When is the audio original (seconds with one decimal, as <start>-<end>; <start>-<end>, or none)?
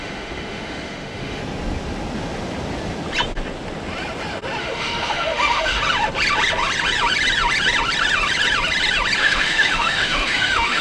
1.4-4.6; 5.8-9.2